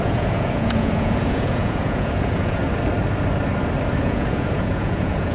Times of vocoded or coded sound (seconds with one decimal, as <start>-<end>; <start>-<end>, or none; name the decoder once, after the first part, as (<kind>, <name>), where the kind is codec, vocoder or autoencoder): 0.0-2.6 (vocoder, Vocos); 4.0-5.3